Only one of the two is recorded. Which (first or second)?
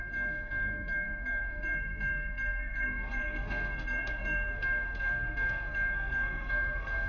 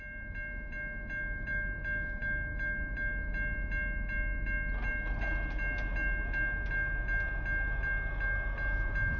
second